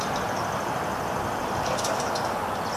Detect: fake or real real